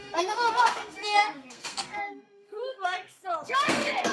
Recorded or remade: remade